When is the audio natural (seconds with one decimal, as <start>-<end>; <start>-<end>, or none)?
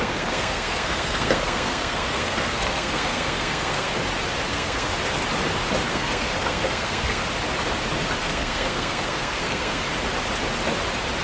3.9-4.5; 4.9-5.9; 7.2-8.2; 9.8-11.2